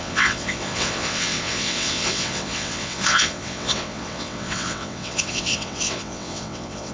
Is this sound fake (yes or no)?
yes